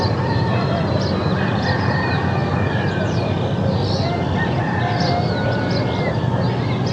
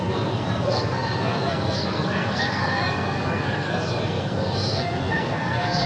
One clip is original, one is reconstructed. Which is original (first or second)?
first